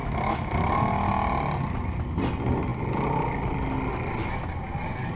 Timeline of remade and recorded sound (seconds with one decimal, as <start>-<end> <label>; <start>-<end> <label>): 0.0-1.1 remade; 1.1-5.2 recorded